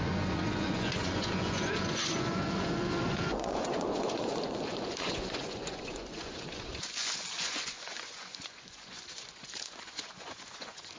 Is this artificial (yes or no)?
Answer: yes